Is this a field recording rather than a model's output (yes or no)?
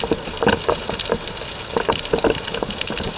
yes